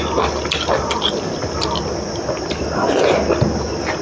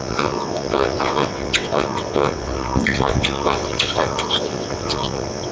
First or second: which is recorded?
first